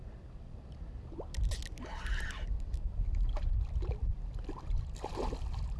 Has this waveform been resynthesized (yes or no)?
no